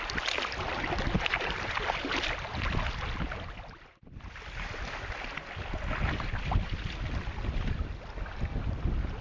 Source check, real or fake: real